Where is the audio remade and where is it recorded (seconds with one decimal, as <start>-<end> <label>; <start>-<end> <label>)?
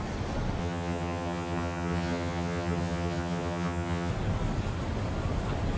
0.0-0.6 recorded; 0.6-4.1 remade; 4.1-5.8 recorded